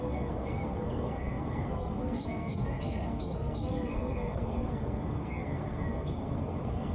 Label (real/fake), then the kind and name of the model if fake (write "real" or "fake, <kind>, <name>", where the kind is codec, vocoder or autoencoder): fake, codec, SNAC